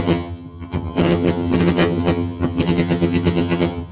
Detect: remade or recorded remade